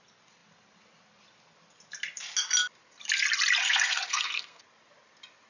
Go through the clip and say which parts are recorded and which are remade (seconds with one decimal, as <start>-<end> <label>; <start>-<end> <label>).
0.0-3.6 recorded; 3.6-4.6 remade; 4.6-5.5 recorded